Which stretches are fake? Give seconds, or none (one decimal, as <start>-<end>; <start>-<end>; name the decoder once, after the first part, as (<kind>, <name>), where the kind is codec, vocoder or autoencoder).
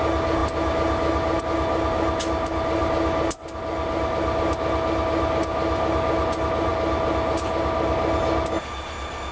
none